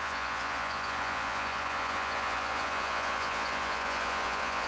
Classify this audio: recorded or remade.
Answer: remade